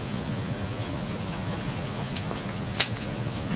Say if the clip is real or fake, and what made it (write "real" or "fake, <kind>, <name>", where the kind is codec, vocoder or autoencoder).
fake, vocoder, Vocos